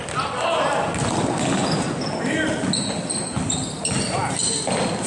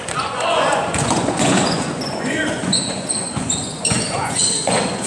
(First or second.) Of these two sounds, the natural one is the first